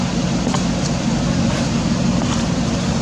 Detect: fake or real real